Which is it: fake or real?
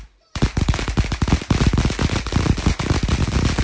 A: real